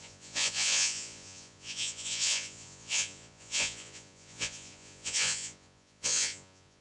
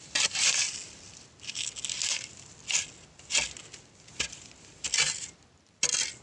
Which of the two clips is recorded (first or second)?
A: second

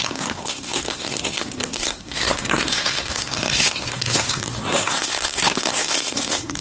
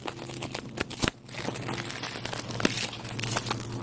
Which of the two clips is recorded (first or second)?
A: second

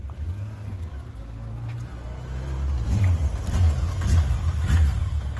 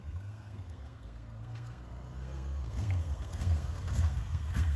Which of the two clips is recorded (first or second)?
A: first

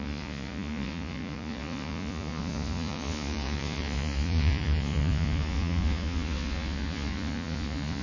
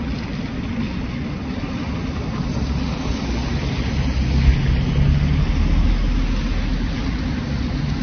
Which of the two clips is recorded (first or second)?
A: second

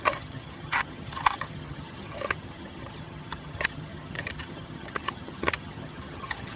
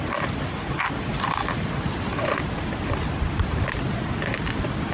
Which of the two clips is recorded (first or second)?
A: second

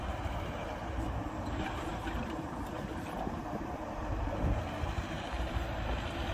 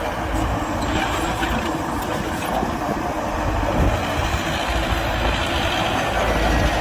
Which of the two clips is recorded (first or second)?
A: second